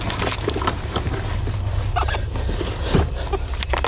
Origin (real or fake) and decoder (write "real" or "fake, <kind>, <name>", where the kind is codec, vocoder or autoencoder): real